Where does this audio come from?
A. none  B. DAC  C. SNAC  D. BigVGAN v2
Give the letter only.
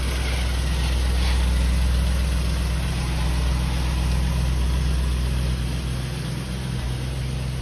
A